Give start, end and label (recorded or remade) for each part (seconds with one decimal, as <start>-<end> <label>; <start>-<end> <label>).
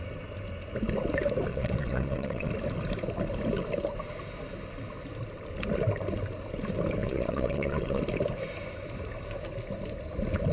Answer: 0.0-1.5 recorded; 1.5-2.5 remade; 2.5-7.0 recorded; 7.0-8.0 remade; 8.0-10.5 recorded